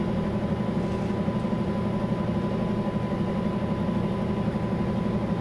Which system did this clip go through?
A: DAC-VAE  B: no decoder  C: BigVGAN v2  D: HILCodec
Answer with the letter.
B